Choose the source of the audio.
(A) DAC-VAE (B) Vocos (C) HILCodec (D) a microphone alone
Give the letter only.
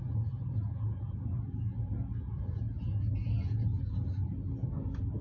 B